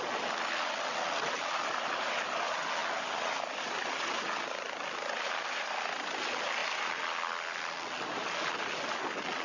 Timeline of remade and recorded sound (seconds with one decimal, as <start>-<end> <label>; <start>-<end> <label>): 0.0-9.4 recorded